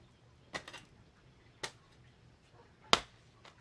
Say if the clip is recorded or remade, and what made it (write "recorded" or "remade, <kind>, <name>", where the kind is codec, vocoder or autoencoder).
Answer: recorded